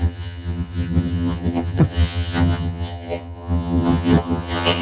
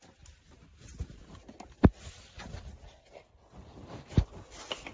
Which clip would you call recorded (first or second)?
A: second